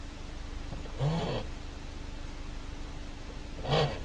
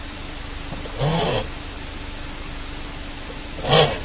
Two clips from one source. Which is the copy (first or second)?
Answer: first